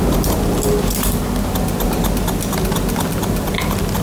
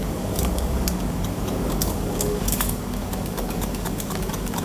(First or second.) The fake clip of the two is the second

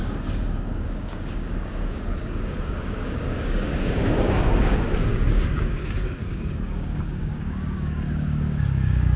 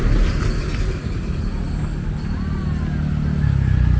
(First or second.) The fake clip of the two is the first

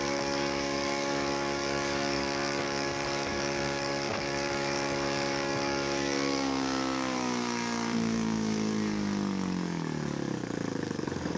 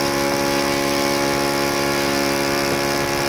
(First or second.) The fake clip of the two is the first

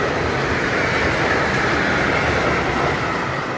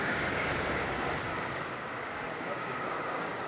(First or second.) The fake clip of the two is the second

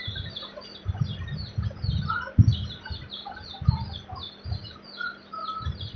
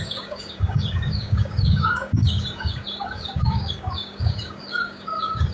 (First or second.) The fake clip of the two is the second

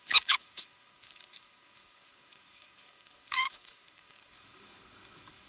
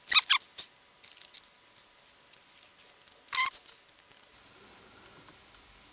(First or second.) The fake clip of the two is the first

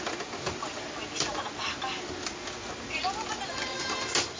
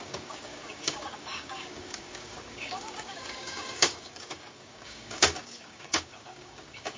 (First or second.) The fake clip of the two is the second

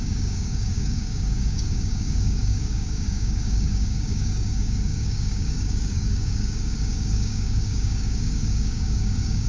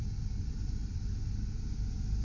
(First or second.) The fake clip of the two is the first